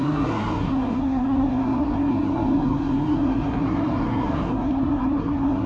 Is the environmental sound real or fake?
fake